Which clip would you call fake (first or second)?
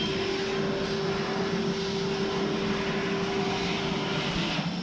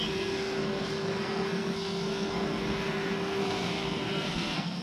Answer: second